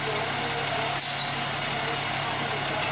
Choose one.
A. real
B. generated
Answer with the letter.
A